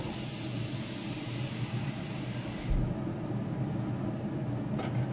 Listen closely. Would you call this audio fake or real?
real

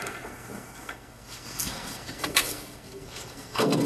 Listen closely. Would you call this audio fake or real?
fake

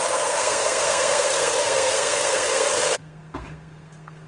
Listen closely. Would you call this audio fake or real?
fake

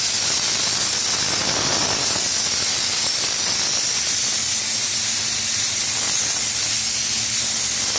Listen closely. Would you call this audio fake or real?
real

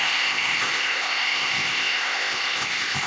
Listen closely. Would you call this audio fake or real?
fake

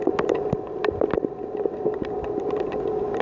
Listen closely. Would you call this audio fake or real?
real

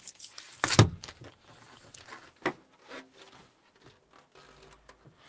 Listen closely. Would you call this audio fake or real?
real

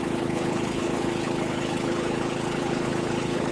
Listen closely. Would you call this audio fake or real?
fake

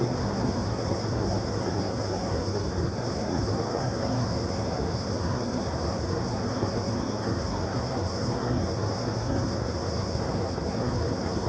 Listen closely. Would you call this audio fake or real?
fake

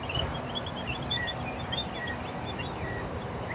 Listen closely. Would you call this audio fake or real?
fake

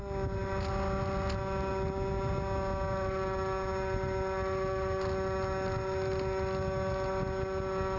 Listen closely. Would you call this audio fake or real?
real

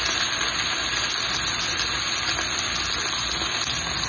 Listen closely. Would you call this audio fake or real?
real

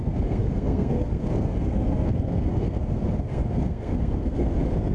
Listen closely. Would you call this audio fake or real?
fake